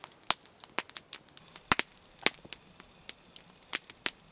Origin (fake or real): real